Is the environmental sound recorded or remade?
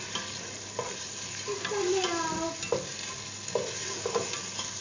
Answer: recorded